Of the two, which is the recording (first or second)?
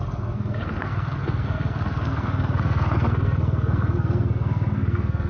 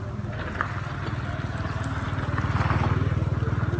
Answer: second